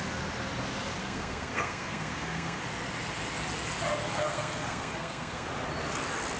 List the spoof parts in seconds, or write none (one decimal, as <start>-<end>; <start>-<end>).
1.0-2.6; 4.1-5.5